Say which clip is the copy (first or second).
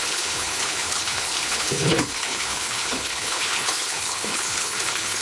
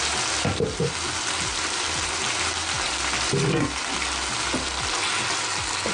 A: first